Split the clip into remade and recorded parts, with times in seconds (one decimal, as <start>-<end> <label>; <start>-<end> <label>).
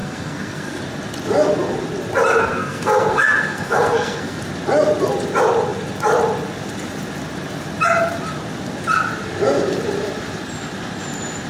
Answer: 0.0-0.8 remade; 0.8-2.4 recorded; 2.4-4.4 remade; 4.4-11.5 recorded